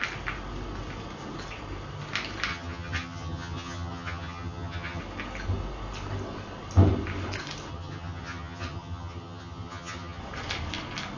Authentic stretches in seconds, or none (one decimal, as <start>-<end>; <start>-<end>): 0.0-2.5; 5.0-7.7; 10.2-11.2